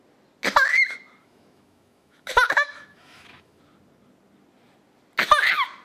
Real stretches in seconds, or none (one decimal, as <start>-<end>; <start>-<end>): 0.0-1.2; 3.6-5.8